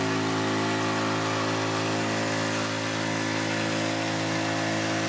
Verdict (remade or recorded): recorded